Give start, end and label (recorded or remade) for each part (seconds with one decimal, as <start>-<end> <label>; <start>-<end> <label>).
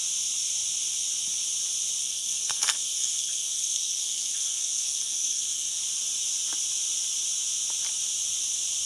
0.0-2.0 recorded; 2.0-5.8 remade; 5.8-8.9 recorded